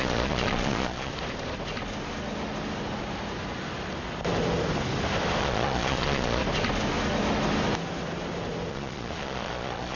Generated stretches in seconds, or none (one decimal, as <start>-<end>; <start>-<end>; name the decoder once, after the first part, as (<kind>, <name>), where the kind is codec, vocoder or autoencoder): 0.0-1.1 (vocoder, Vocos); 5.4-6.4; 8.7-10.0